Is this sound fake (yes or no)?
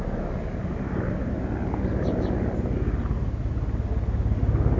no